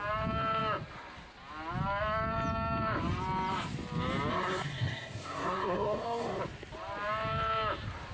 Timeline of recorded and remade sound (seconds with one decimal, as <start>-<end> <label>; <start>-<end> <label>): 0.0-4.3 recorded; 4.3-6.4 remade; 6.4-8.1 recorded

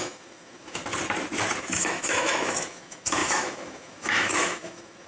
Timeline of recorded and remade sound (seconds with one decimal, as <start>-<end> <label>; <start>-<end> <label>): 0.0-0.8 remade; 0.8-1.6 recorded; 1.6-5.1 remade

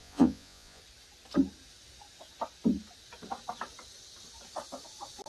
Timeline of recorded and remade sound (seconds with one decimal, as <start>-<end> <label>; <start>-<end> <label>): 0.0-0.8 remade; 0.8-5.3 recorded

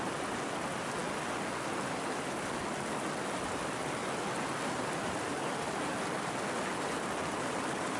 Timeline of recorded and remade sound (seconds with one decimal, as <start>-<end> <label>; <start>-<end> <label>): 0.0-8.0 recorded